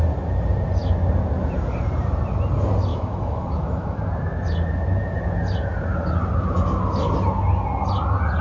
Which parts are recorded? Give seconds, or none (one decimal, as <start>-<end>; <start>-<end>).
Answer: 0.0-2.9; 4.0-8.4